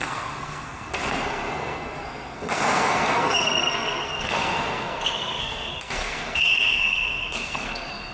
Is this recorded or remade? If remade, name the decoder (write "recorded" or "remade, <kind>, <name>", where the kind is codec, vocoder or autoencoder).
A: remade, codec, SNAC